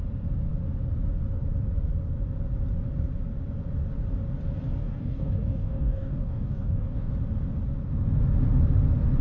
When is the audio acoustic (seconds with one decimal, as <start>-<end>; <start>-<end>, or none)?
0.0-4.8; 7.1-9.2